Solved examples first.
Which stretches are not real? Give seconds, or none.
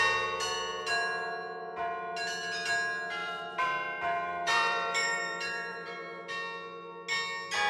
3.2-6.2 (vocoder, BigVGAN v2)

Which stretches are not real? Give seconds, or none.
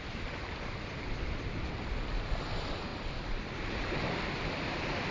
none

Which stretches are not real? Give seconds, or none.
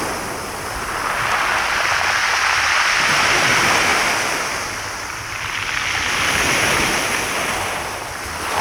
none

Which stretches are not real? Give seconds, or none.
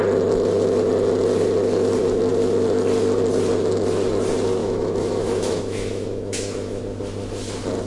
4.6-6.8 (autoencoder, DAC-VAE)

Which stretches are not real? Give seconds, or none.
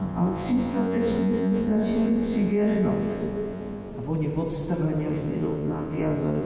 0.0-3.9 (vocoder, Vocos); 5.1-6.4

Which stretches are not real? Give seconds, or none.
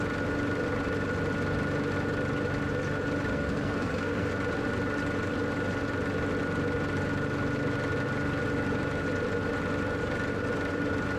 3.3-4.3 (codec, SNAC)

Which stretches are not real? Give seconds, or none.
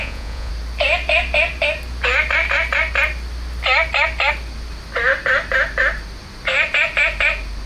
0.0-0.5 (vocoder, Vocos)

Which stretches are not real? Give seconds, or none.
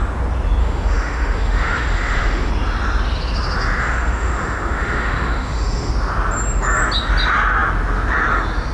0.6-2.5 (autoencoder, DAC-VAE); 3.8-5.9